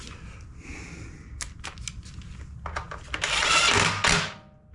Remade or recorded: recorded